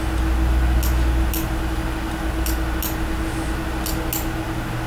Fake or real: real